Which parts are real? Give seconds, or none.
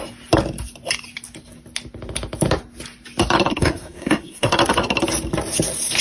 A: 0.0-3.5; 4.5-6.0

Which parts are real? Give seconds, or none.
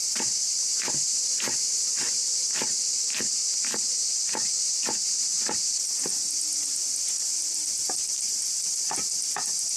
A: 6.1-7.1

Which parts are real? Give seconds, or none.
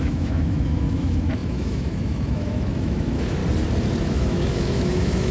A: 3.4-4.0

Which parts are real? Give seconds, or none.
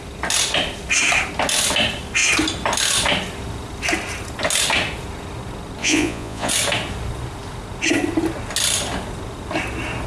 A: 0.0-5.8; 6.5-10.1